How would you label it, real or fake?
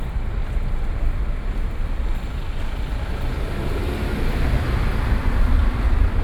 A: fake